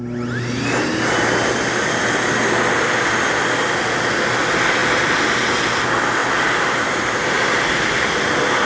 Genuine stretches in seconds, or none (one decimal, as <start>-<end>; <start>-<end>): 0.0-6.2; 7.9-8.7